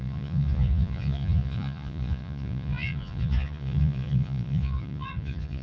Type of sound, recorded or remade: remade